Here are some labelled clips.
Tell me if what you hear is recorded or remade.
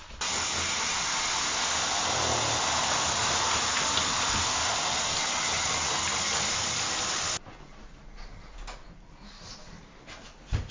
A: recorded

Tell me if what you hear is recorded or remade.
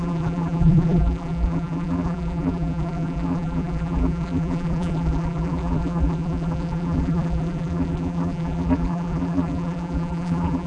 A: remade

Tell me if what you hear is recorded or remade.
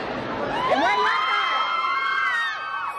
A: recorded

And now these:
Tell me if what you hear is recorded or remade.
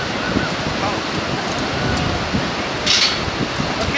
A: recorded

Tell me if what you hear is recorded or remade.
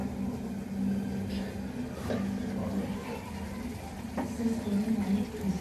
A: recorded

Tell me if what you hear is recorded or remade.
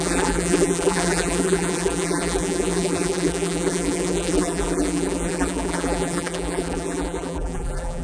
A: remade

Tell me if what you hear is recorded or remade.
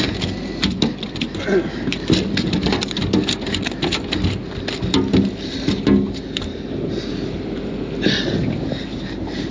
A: recorded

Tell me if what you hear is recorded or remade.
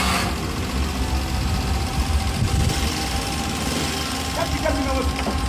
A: recorded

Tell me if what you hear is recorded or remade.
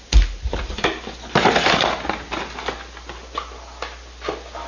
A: recorded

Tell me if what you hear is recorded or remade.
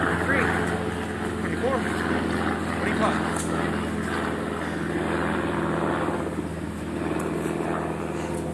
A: recorded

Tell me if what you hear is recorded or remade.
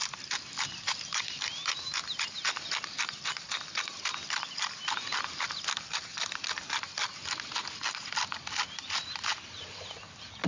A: remade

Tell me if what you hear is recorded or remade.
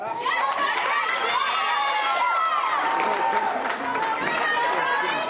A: remade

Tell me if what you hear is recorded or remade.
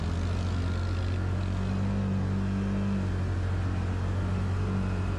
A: recorded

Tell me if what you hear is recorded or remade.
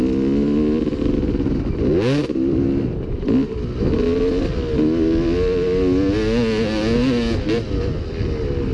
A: recorded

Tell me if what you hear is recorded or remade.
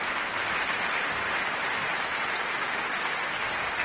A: remade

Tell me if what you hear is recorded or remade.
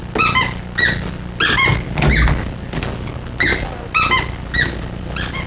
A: recorded